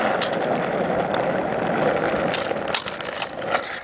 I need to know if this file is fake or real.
real